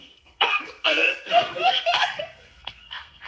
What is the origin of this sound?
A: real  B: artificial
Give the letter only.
B